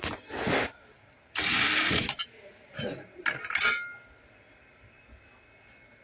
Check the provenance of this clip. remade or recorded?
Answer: recorded